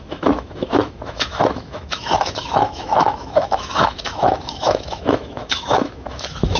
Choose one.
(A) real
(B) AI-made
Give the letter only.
B